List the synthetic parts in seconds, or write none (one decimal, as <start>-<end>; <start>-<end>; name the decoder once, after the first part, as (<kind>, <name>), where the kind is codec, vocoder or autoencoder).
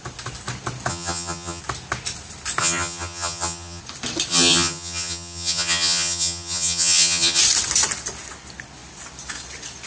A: 0.9-1.6 (vocoder, HiFi-GAN); 2.6-3.8; 4.3-7.4